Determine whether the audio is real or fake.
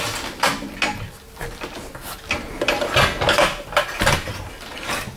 real